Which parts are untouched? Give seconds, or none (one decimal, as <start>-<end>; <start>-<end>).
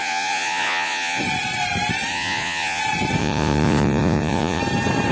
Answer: 1.2-2.1; 2.8-3.2; 4.6-5.1